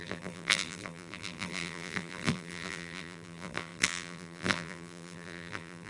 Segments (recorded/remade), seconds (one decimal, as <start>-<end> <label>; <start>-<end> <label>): 0.0-5.9 remade